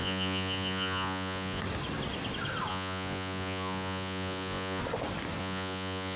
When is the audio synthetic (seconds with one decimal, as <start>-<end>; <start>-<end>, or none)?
0.0-1.6; 2.7-4.8; 5.4-6.2